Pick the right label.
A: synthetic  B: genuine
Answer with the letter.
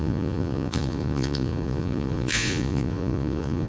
A